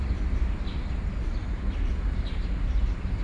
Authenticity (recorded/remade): remade